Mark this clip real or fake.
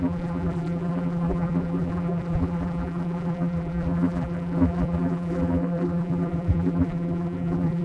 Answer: fake